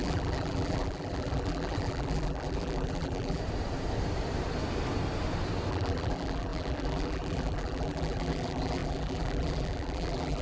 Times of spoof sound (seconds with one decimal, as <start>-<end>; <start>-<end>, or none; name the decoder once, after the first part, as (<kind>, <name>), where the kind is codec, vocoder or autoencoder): 0.0-3.4 (vocoder, BigVGAN v2); 5.7-10.4

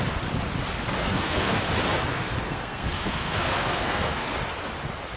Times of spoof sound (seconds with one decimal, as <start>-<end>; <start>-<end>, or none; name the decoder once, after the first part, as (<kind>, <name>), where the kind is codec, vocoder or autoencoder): 1.0-1.6 (codec, SNAC); 2.1-4.3

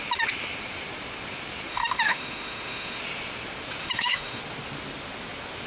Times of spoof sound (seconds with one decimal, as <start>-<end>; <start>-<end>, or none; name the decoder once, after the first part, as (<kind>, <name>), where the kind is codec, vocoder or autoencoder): 1.7-3.0 (autoencoder, DAC-VAE); 3.8-4.4

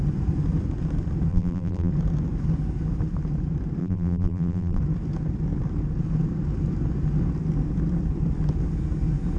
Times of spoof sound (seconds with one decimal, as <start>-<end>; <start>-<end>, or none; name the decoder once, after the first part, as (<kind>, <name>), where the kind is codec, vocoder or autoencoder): 1.3-1.9 (vocoder, BigVGAN v2); 3.8-4.8